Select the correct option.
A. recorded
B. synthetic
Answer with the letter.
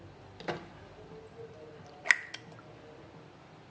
A